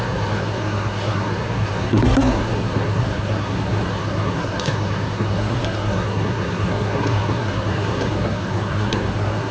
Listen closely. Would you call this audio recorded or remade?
remade